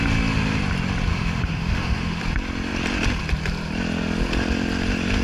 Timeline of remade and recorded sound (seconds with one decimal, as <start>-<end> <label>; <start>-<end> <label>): 0.0-1.1 recorded; 1.1-2.2 remade; 2.2-5.2 recorded